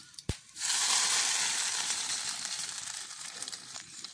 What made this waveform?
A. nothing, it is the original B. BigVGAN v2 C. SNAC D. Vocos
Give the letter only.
B